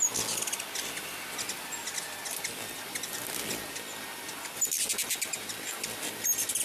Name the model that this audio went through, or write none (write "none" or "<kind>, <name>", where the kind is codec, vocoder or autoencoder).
none